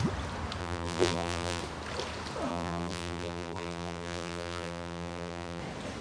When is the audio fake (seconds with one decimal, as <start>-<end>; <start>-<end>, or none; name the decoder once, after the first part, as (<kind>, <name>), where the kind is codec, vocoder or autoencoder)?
0.6-1.6 (vocoder, BigVGAN v2); 2.5-5.6